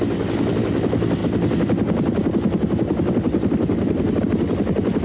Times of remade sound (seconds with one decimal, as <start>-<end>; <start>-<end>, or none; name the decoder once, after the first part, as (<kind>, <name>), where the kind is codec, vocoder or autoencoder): none